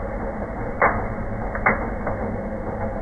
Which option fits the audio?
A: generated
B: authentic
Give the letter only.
B